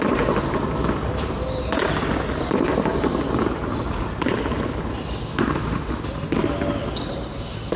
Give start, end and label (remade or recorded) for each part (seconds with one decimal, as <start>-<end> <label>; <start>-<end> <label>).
0.0-5.3 recorded; 5.3-6.0 remade; 6.0-7.8 recorded